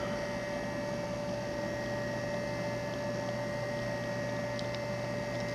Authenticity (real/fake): real